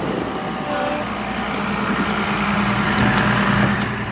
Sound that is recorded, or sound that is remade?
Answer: recorded